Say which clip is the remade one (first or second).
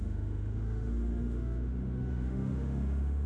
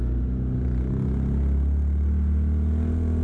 first